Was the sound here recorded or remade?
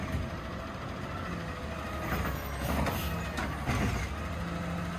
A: recorded